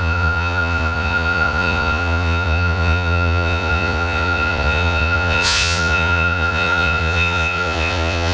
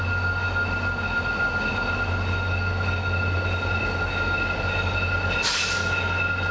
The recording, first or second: second